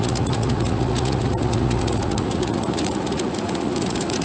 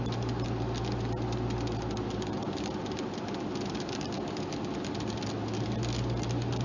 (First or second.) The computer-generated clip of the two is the first